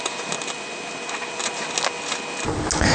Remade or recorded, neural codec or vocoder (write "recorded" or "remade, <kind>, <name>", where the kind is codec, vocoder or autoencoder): recorded